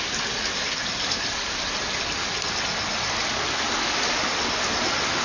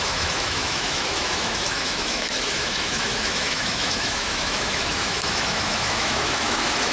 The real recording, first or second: first